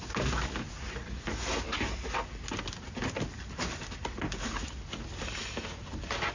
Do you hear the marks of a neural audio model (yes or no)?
no